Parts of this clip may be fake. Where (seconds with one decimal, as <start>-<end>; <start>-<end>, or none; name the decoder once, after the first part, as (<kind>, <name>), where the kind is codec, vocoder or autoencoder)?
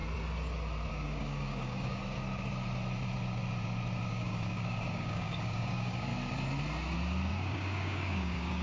0.9-2.0 (codec, DAC); 4.1-6.1; 7.3-8.6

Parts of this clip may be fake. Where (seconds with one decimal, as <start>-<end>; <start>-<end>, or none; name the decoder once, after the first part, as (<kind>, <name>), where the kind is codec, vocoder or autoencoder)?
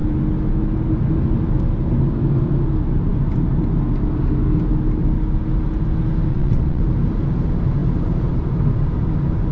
6.3-6.8 (vocoder, WaveNeXt)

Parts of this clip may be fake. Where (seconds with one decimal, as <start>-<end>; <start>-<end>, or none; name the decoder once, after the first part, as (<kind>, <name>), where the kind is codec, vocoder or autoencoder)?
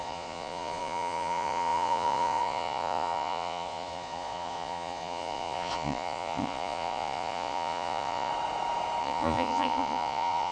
0.0-8.3 (vocoder, Vocos); 9.0-10.5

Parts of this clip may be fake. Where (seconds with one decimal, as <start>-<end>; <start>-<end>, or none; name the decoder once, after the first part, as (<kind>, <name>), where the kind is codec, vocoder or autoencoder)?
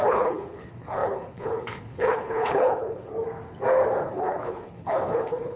0.0-3.1 (codec, HILCodec); 4.0-5.6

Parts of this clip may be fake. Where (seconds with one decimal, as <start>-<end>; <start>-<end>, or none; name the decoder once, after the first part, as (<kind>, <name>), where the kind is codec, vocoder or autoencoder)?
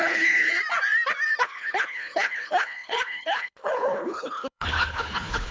0.0-0.5 (codec, HILCodec); 1.4-5.5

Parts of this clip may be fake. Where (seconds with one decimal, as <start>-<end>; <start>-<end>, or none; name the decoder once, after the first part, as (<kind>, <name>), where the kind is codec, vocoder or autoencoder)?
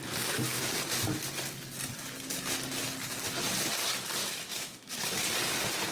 4.2-4.9 (autoencoder, DAC-VAE)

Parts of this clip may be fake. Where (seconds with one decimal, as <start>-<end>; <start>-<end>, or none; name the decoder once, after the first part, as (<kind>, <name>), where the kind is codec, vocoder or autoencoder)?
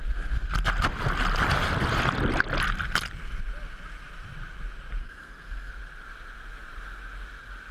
5.0-5.7 (codec, SNAC)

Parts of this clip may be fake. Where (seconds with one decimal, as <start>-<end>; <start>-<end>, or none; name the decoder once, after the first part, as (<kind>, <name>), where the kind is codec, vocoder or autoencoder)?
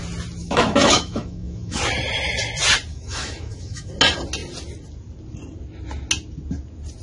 0.4-1.8 (autoencoder, DAC-VAE); 2.9-3.9